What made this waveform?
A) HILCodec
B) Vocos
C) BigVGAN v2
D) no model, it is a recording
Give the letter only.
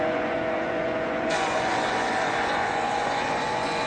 B